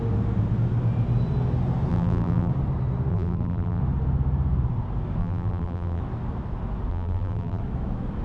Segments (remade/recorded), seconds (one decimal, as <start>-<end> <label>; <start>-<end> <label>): 0.0-1.9 recorded; 1.9-2.5 remade; 2.5-3.1 recorded; 3.1-3.8 remade; 3.8-5.2 recorded; 5.2-6.0 remade; 6.0-6.9 recorded; 6.9-7.6 remade; 7.6-8.2 recorded